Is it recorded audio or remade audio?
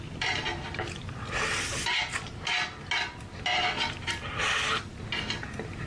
recorded